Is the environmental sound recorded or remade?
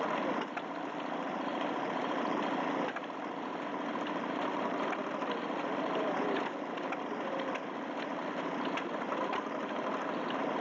recorded